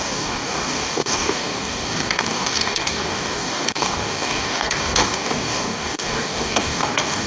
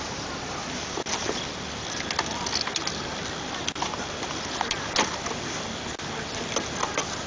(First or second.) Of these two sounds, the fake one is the first